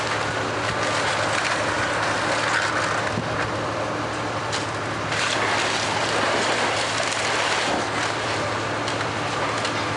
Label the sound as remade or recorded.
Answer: recorded